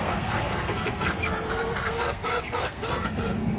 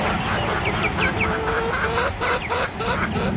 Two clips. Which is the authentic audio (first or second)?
second